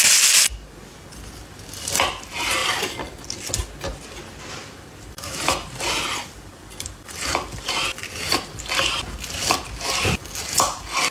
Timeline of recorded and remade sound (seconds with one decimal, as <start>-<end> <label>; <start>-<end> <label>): 0.0-2.6 recorded; 2.6-3.5 remade; 3.5-3.9 recorded; 3.9-8.1 remade; 8.1-11.1 recorded